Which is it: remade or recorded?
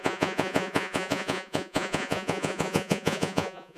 remade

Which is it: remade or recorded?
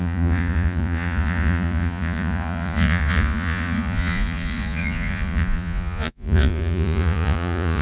remade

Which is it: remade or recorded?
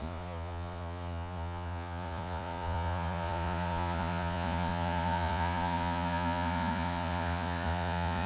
remade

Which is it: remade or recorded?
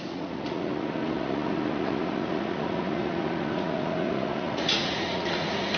remade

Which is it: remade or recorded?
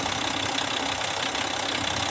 recorded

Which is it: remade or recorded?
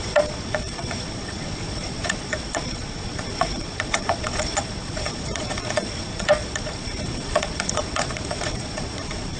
remade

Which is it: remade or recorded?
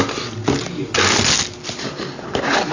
recorded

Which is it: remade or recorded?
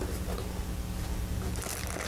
recorded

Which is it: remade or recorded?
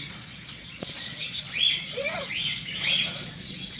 remade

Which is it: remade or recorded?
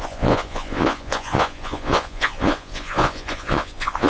remade